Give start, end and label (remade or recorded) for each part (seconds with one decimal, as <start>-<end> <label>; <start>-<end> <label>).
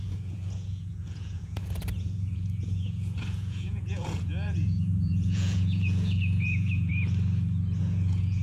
0.0-6.9 remade; 6.9-7.8 recorded; 7.8-8.4 remade